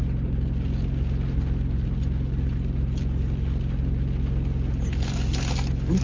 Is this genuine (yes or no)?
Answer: yes